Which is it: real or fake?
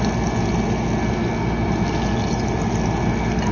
real